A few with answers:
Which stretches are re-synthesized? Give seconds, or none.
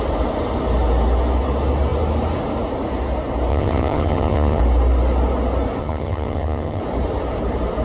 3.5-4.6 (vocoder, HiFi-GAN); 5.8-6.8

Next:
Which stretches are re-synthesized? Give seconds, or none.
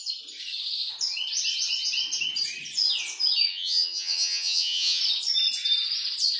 3.5-5.0 (vocoder, HiFi-GAN)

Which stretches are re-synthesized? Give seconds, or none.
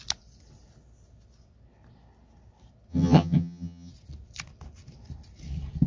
2.9-3.9 (vocoder, HiFi-GAN)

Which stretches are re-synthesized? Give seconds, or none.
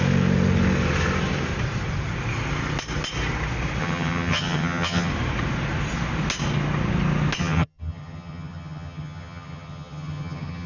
3.8-5.1 (vocoder, HiFi-GAN); 7.4-10.7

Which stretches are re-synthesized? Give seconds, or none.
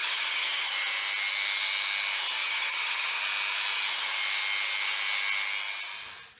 0.0-0.7 (vocoder, HiFi-GAN); 2.4-3.2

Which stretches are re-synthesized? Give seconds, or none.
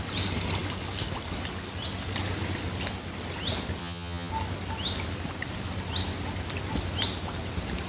3.8-4.3 (vocoder, HiFi-GAN)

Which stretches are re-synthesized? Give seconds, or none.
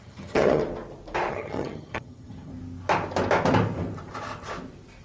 0.0-0.6 (vocoder, HiFi-GAN); 1.3-2.5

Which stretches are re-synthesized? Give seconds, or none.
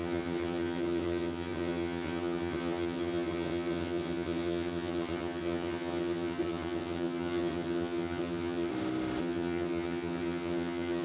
0.0-8.7 (vocoder, HiFi-GAN); 9.2-11.0